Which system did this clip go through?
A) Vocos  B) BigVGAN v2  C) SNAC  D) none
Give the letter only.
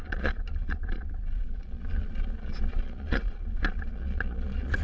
A